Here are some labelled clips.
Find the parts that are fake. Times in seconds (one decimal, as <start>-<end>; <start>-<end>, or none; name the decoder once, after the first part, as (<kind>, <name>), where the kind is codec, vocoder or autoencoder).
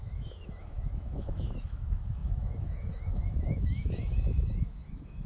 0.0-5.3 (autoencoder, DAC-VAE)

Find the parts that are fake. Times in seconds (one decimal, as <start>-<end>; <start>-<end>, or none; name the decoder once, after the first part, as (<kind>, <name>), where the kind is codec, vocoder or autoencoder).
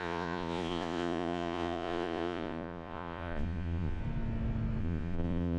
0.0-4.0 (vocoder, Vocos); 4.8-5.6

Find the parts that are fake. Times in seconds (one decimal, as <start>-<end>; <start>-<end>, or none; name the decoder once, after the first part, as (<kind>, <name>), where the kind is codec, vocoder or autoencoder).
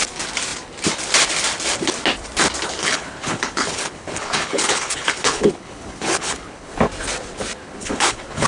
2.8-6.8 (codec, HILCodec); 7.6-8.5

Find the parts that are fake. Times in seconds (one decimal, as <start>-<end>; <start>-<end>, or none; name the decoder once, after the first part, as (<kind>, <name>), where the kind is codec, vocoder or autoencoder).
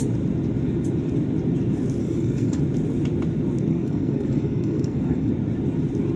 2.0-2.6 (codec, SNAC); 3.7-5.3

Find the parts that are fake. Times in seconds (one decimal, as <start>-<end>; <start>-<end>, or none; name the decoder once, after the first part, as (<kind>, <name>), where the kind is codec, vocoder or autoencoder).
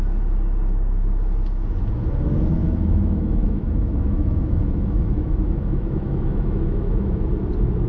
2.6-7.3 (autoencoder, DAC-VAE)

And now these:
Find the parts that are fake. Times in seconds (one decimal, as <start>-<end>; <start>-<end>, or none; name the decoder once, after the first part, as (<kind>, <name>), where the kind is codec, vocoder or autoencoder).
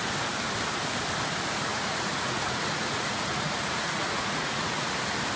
1.7-4.9 (vocoder, Vocos)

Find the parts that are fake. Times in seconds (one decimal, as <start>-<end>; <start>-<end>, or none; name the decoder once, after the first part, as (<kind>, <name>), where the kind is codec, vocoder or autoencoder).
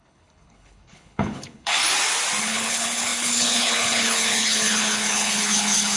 0.0-1.8 (codec, HILCodec); 2.4-6.0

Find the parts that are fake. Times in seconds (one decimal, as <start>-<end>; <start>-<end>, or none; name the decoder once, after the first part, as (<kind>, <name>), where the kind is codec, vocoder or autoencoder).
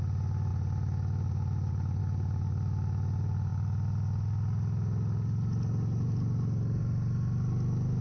none